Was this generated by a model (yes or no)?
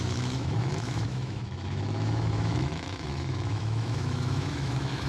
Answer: yes